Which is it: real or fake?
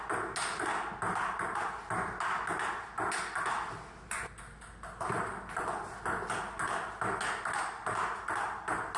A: real